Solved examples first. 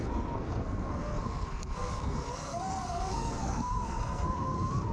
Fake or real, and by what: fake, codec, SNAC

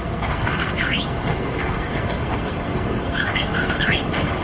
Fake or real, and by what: fake, codec, SNAC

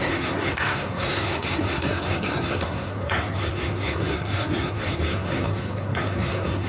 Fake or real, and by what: fake, codec, SNAC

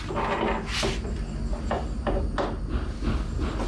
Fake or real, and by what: real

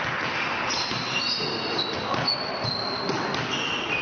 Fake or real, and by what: real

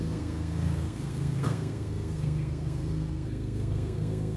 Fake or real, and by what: fake, codec, SNAC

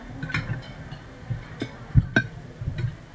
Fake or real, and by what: real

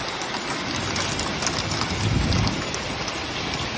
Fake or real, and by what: real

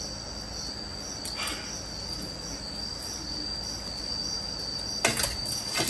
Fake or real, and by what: real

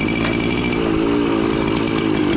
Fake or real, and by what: real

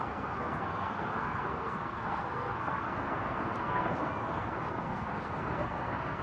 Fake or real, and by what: fake, codec, SNAC